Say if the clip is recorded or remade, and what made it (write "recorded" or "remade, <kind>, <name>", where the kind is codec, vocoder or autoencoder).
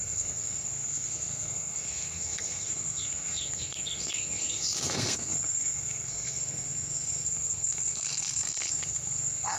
remade, codec, SNAC